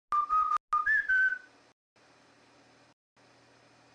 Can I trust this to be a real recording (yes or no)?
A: yes